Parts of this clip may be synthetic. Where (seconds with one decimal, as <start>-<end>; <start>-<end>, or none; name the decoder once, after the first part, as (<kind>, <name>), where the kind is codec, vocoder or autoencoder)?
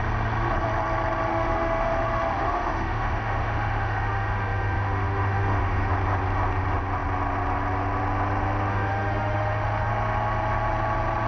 1.3-5.9 (autoencoder, DAC-VAE); 8.7-9.9